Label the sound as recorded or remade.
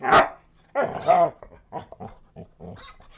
recorded